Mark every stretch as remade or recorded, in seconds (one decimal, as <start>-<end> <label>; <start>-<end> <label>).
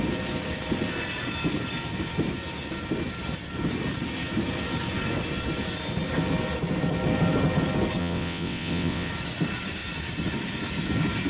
0.0-8.0 recorded; 8.0-9.1 remade; 9.1-11.3 recorded